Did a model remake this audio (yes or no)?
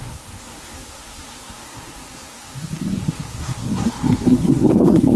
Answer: yes